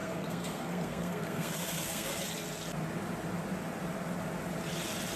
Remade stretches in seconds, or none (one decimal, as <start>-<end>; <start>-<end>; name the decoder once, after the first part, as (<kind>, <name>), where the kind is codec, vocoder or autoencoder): 0.0-2.3 (codec, SNAC)